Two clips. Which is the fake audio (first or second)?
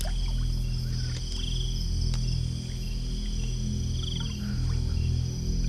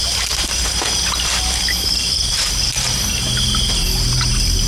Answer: second